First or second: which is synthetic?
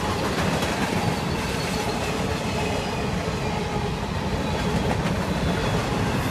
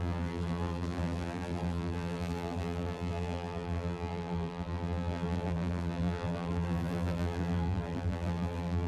second